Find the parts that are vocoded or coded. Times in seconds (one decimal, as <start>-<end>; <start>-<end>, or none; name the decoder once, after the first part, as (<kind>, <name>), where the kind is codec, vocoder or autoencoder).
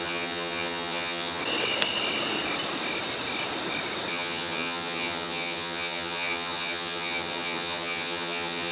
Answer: 0.0-1.4 (vocoder, HiFi-GAN); 4.1-8.7